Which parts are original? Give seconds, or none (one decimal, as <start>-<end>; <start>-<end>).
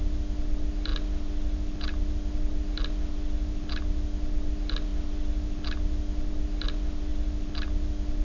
0.0-8.2